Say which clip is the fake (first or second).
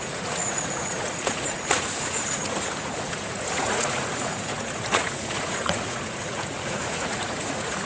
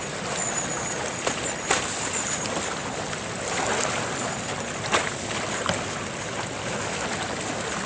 first